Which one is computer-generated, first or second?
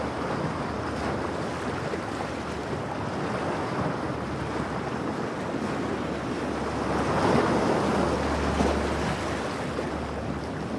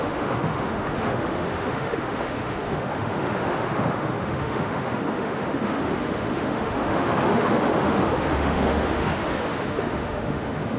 second